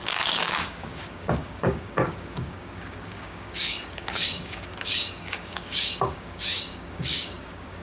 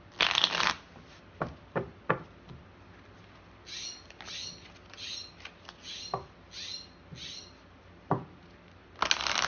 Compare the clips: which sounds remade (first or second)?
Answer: first